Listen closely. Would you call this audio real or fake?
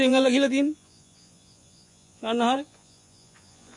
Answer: fake